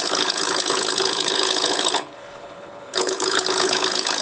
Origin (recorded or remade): remade